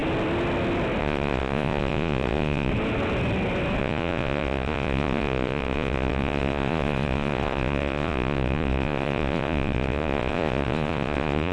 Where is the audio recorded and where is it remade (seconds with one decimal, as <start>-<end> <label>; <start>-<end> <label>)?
0.0-1.0 recorded; 1.0-2.7 remade; 2.7-3.8 recorded; 3.8-11.5 remade